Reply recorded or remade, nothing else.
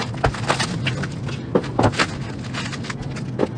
recorded